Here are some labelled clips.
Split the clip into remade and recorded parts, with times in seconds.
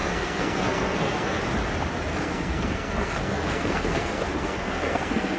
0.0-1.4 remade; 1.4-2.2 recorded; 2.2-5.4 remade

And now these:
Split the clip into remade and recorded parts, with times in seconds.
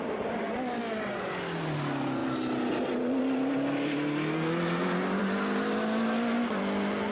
0.0-7.1 recorded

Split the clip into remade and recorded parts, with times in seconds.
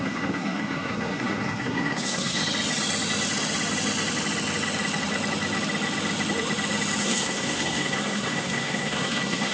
0.0-2.4 remade; 2.4-7.0 recorded; 7.0-9.5 remade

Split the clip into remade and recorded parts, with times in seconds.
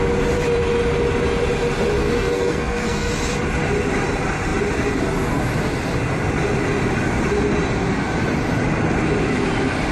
0.0-2.0 recorded; 2.0-3.1 remade; 3.1-9.9 recorded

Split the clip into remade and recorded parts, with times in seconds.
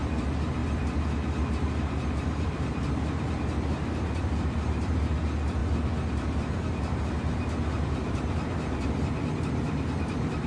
0.0-10.5 recorded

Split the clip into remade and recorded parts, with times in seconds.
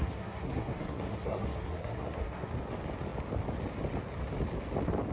0.0-2.5 remade; 2.5-5.1 recorded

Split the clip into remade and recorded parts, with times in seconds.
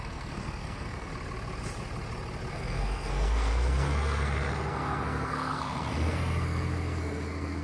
0.0-1.1 remade; 1.1-2.5 recorded; 2.5-7.6 remade